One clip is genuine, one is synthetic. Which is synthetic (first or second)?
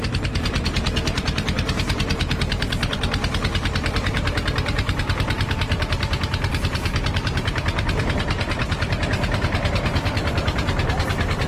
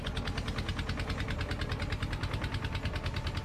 first